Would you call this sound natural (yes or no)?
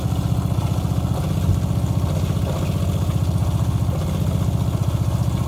yes